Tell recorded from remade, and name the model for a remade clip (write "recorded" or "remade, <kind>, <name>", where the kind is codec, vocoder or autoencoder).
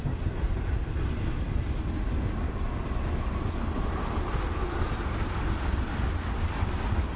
recorded